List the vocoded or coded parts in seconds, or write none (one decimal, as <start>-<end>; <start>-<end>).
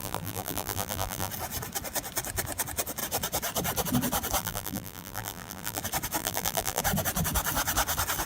0.0-1.3; 4.4-5.8; 6.2-6.8